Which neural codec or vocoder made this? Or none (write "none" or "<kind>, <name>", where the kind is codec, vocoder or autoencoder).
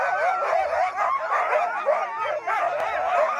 none